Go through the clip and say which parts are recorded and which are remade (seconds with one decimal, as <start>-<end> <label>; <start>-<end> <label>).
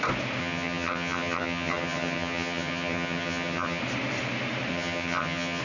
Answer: 0.0-0.4 recorded; 0.4-3.8 remade; 3.8-4.7 recorded; 4.7-5.6 remade